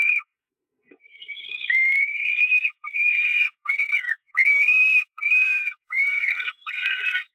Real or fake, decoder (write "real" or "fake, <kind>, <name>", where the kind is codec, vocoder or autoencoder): fake, codec, SNAC